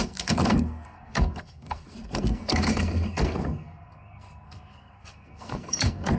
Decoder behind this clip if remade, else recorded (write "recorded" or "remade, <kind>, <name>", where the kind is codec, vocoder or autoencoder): remade, codec, SNAC